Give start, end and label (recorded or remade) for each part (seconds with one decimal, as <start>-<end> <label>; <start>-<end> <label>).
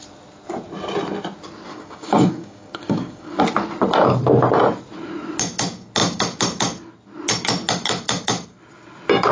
0.0-1.7 recorded; 1.7-3.4 remade; 3.4-9.3 recorded